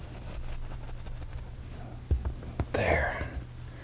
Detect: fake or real real